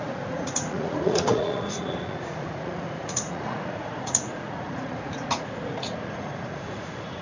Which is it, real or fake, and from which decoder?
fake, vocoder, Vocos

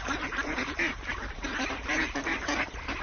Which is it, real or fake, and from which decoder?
fake, vocoder, BigVGAN v2